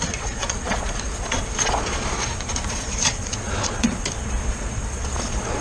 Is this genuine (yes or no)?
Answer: no